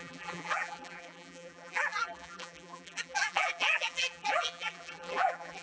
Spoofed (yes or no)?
yes